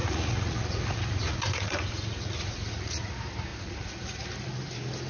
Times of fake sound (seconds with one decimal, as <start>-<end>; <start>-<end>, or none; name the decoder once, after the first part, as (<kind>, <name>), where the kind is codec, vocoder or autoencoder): 0.0-3.1 (vocoder, Vocos); 3.5-4.2